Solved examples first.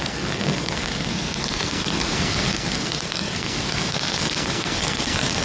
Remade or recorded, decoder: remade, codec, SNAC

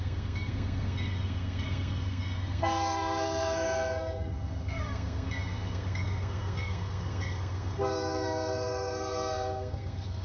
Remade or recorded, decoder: remade, codec, SNAC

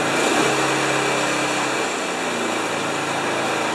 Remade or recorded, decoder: recorded